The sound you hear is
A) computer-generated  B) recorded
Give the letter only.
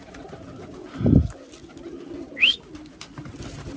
B